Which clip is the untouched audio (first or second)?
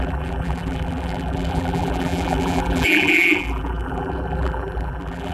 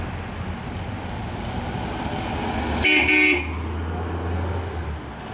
second